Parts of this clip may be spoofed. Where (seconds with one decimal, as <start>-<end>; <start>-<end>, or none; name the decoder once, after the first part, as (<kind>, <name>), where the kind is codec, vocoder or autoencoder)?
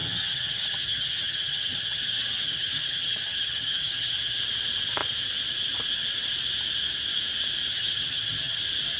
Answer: 0.0-4.4 (vocoder, HiFi-GAN); 7.7-8.6